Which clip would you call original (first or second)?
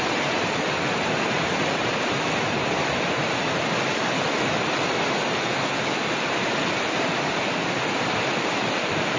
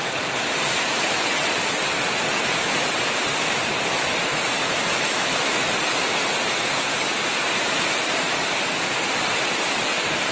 second